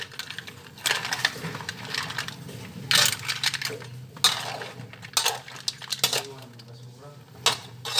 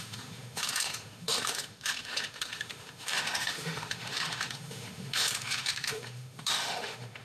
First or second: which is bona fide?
first